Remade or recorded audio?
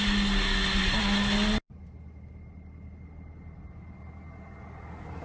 recorded